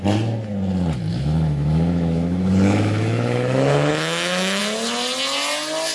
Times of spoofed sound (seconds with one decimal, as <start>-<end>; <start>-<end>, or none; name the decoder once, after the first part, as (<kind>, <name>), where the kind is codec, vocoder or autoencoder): 1.1-4.6 (autoencoder, DAC-VAE)